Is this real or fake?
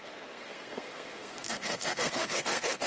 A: fake